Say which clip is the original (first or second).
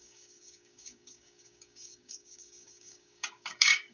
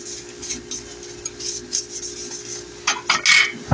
second